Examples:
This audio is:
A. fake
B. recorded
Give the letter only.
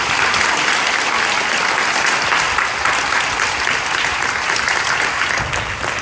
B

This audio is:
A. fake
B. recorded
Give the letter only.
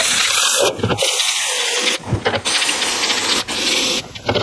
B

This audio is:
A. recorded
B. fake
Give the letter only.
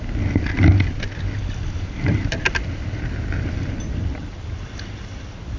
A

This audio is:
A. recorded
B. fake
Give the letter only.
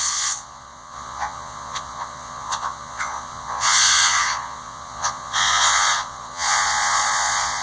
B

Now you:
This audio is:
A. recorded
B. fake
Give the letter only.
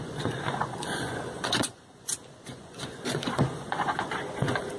B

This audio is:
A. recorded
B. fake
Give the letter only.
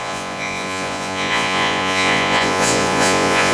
B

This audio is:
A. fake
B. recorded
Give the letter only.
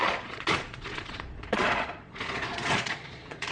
A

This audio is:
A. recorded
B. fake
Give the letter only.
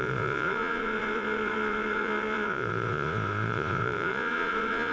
B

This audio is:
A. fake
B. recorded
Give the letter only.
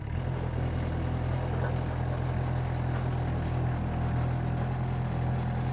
B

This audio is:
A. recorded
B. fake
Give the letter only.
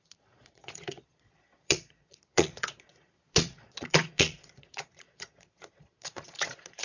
B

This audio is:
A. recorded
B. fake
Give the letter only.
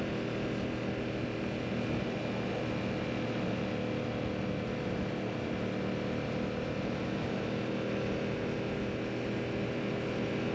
A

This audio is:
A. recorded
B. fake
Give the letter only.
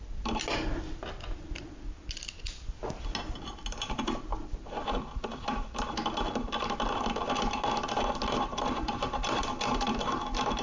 A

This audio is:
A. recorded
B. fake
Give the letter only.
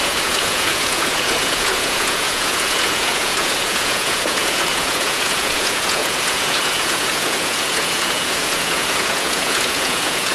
B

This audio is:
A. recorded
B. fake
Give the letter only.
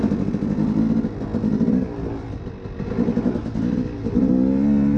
A